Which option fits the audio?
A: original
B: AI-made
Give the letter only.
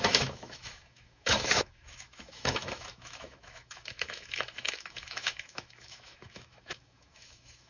B